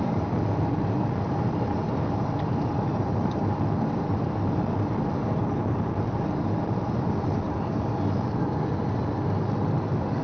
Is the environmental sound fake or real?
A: fake